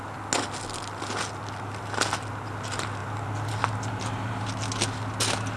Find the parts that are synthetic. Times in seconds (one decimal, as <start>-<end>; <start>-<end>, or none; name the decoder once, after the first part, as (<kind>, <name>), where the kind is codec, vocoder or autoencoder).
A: none